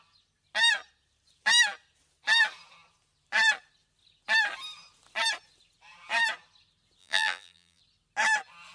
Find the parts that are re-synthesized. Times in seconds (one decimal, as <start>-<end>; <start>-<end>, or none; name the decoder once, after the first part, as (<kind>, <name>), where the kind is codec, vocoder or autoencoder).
7.0-7.8 (vocoder, BigVGAN v2)